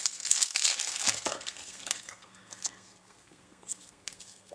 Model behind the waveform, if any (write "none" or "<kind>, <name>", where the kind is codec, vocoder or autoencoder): codec, SNAC